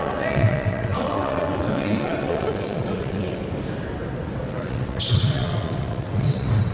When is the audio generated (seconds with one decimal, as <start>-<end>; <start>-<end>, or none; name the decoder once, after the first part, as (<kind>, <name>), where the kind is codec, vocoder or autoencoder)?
0.0-3.4 (vocoder, WaveNeXt); 4.5-6.7